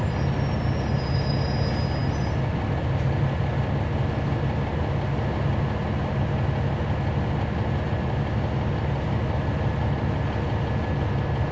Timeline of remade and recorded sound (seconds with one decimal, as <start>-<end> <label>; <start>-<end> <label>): 0.0-11.5 recorded